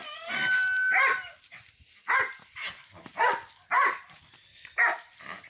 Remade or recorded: recorded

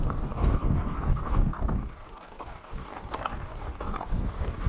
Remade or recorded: remade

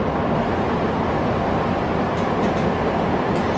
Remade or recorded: recorded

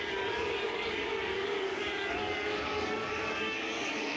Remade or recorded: remade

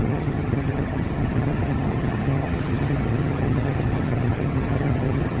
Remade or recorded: remade